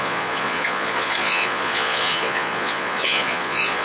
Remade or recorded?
remade